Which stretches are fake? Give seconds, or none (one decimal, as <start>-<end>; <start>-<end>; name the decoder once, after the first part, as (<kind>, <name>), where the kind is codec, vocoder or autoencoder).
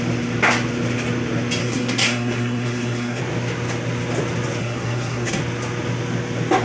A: 1.6-3.2 (codec, SNAC); 4.6-5.4